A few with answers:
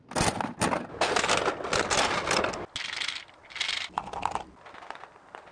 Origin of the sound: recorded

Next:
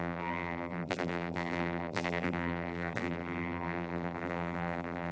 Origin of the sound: remade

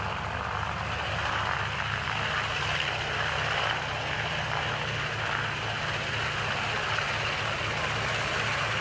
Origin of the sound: recorded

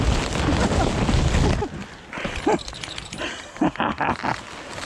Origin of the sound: recorded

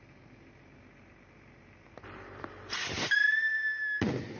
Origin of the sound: recorded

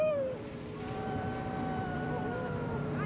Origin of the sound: remade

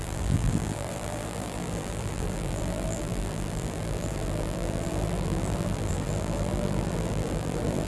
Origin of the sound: remade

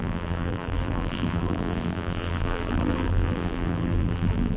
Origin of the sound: remade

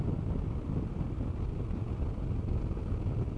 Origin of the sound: recorded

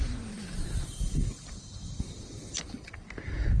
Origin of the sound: remade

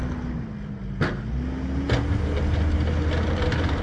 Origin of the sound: recorded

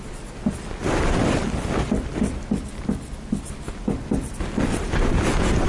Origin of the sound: recorded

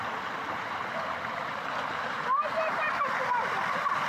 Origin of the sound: recorded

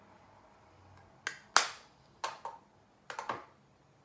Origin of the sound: recorded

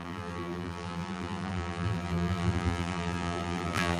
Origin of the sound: remade